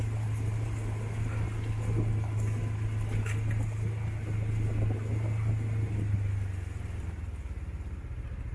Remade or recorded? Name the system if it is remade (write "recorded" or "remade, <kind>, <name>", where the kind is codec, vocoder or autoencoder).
recorded